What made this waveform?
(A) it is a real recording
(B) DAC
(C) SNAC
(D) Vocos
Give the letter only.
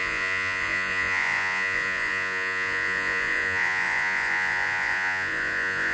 D